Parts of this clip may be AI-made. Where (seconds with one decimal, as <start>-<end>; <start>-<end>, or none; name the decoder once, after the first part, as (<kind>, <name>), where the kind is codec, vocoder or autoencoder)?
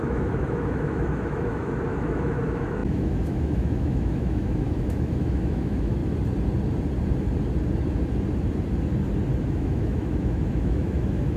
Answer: 0.0-6.0 (autoencoder, DAC-VAE); 9.4-11.4